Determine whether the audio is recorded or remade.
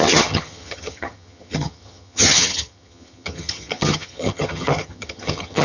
remade